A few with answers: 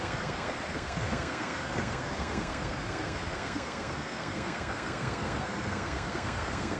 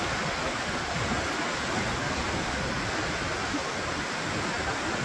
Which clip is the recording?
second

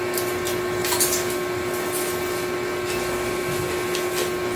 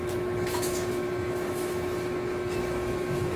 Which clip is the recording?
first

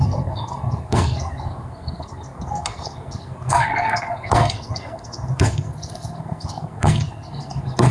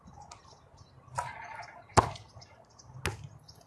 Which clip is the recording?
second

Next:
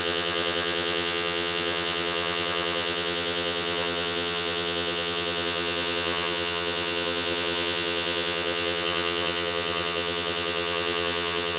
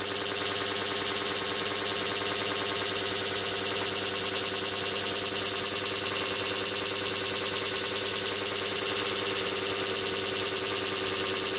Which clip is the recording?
second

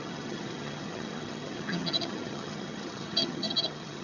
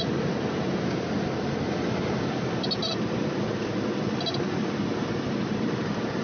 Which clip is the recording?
second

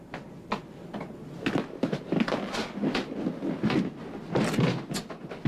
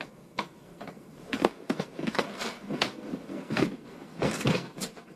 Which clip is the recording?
first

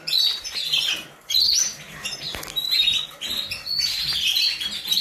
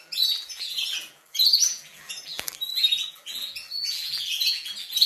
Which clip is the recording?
first